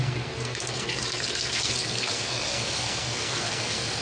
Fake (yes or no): yes